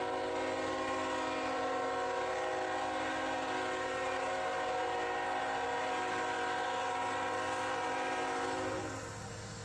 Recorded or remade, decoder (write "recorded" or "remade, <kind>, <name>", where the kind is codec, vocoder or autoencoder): recorded